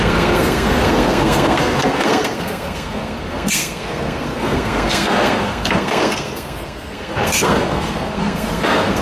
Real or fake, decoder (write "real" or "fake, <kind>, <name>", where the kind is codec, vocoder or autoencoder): fake, codec, SNAC